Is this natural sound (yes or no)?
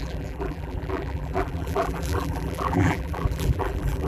no